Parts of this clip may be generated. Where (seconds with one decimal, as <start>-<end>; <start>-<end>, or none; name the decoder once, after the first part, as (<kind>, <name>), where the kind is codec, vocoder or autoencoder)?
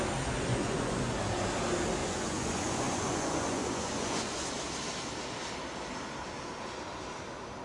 0.5-1.1 (vocoder, Vocos); 2.0-4.5